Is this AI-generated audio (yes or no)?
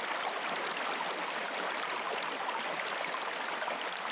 no